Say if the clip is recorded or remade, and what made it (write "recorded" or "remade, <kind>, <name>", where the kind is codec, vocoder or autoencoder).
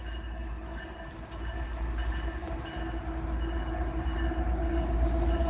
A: recorded